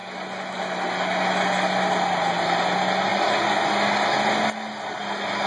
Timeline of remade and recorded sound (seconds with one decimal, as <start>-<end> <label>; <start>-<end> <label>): 0.0-5.5 recorded